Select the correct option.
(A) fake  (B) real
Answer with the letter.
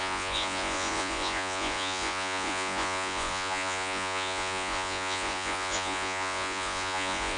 A